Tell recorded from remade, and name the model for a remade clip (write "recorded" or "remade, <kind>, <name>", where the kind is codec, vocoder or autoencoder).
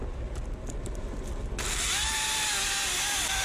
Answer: recorded